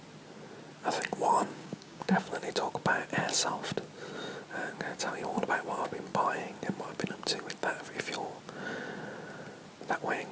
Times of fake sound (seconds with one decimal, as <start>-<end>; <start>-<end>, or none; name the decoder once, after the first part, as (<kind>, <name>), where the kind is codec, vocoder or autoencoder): 1.4-2.3 (codec, DAC)

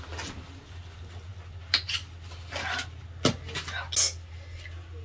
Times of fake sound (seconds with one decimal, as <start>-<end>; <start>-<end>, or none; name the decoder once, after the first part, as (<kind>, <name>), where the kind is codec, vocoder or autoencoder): none

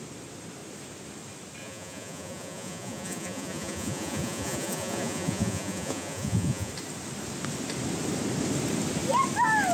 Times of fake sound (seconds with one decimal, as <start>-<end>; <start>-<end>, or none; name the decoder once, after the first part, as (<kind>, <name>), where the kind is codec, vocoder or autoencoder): 1.6-6.7 (vocoder, Vocos)

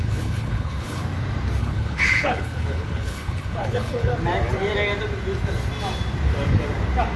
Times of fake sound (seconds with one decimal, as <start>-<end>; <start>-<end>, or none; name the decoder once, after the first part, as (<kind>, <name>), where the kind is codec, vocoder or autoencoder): 0.0-1.0 (codec, HILCodec); 1.6-4.1

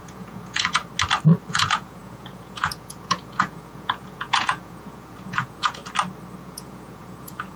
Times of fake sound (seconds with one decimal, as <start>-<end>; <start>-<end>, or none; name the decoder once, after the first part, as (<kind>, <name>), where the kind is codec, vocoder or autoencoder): 0.0-0.8 (vocoder, Vocos); 1.5-5.8; 6.4-7.6

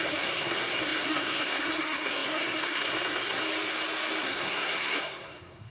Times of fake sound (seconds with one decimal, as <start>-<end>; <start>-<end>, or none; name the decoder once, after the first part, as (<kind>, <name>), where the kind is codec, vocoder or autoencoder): 0.0-3.4 (codec, SNAC); 4.2-5.7

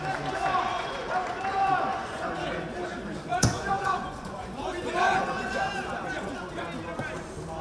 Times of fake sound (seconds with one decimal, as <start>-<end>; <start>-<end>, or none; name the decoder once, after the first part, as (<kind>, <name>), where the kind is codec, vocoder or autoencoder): 0.7-2.3 (vocoder, Vocos); 3.3-5.7